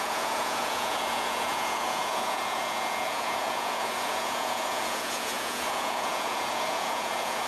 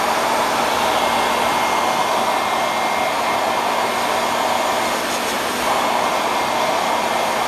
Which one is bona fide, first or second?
second